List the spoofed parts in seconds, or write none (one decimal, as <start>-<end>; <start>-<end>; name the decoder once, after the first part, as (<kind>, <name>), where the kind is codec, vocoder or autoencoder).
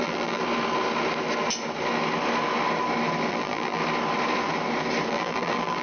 0.0-0.4 (vocoder, BigVGAN v2); 3.3-3.8; 5.1-5.8